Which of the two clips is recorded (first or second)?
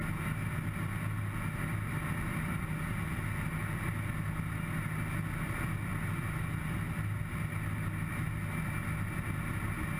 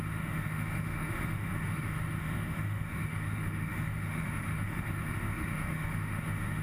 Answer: first